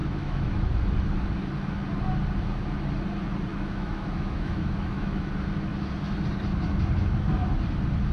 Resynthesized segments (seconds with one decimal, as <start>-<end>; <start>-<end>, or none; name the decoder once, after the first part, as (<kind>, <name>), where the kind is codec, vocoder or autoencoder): 0.0-0.7 (autoencoder, DAC-VAE); 3.5-5.3

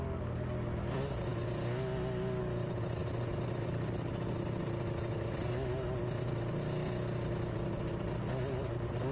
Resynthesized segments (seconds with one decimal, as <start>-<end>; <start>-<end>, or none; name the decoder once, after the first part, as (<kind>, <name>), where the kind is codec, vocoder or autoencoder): none

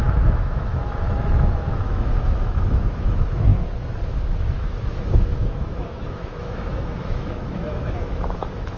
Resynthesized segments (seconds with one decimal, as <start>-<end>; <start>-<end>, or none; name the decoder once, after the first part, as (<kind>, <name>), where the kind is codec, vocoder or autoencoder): 0.0-3.5 (autoencoder, DAC-VAE); 4.5-8.8